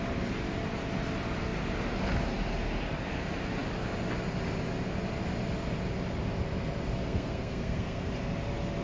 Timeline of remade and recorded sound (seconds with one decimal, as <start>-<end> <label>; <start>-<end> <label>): 0.0-7.0 recorded; 7.0-8.1 remade; 8.1-8.8 recorded